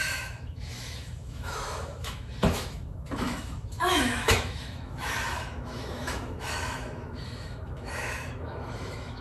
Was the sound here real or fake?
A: fake